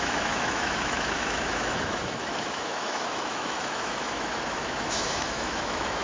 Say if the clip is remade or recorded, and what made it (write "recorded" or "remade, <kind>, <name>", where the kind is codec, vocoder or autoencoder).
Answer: remade, autoencoder, DAC-VAE